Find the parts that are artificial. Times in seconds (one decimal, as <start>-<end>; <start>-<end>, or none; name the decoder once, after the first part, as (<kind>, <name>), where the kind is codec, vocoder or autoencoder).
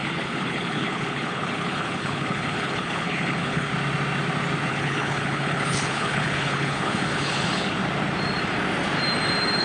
0.0-3.7 (codec, HILCodec); 4.7-7.8